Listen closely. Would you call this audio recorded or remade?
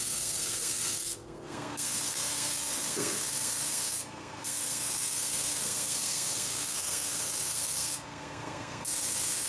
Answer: remade